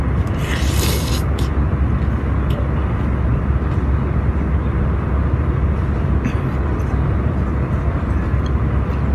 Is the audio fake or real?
real